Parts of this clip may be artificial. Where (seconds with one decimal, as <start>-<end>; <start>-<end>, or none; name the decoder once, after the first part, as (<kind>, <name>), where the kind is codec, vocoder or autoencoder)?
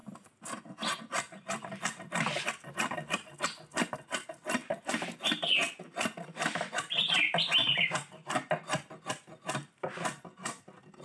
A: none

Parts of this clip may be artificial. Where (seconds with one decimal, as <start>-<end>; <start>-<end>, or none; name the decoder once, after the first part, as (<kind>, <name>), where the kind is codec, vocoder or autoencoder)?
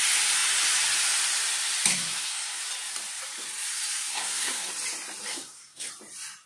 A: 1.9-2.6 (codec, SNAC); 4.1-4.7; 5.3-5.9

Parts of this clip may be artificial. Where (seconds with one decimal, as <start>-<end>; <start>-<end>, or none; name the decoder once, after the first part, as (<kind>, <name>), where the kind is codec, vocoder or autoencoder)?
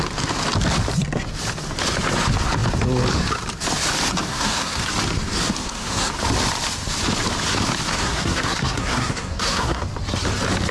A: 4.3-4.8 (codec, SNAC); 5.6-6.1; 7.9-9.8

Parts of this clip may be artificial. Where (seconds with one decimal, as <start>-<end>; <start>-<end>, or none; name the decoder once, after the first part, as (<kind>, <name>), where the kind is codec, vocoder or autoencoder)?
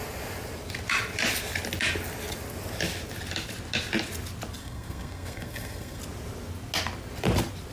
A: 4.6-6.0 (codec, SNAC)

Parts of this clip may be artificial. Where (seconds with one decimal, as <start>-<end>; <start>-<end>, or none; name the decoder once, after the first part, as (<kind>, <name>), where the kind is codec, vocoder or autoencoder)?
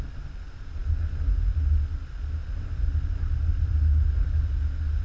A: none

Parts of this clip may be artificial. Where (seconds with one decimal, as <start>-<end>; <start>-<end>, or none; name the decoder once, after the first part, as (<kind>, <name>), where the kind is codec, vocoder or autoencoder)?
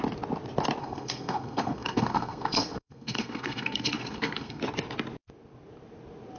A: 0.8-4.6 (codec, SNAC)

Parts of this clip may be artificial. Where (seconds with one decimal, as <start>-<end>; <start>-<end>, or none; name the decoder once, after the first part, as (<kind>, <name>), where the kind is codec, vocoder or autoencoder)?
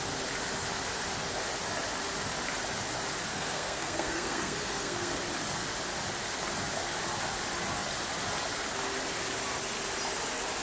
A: 3.3-5.2 (codec, SNAC)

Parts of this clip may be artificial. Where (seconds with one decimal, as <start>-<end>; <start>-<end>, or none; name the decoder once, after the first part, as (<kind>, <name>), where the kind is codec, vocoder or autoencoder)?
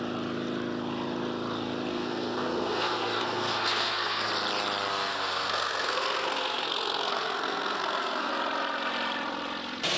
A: 1.9-4.3 (codec, SNAC); 4.9-8.3